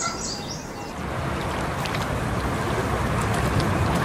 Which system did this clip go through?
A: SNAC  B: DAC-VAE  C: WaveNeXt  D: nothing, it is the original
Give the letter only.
D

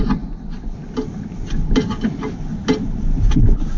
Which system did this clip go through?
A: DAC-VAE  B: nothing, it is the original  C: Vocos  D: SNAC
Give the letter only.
B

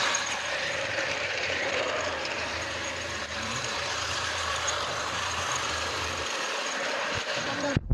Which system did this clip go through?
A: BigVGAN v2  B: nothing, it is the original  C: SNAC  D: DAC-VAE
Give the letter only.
A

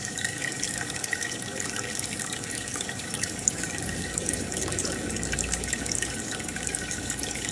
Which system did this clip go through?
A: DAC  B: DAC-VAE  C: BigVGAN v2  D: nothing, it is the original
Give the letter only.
A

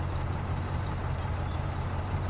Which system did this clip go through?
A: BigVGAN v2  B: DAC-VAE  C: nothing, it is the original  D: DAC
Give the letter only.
A